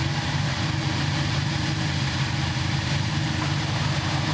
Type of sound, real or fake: fake